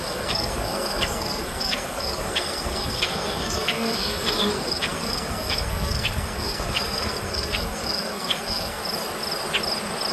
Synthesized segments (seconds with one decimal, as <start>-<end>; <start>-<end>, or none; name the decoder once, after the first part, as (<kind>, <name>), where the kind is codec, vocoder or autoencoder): 0.0-8.8 (codec, SNAC)